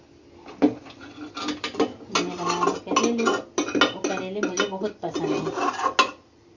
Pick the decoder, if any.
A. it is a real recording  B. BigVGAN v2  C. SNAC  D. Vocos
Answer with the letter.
A